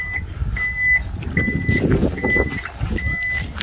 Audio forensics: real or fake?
real